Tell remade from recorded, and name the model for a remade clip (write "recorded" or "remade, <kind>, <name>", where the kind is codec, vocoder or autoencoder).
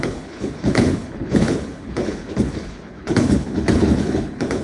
remade, codec, HILCodec